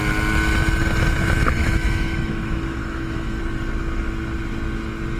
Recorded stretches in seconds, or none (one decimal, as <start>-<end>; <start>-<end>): 0.0-1.6; 3.4-5.2